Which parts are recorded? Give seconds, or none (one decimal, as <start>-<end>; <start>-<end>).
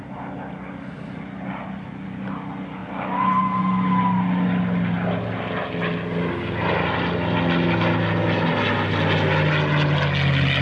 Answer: 0.0-10.6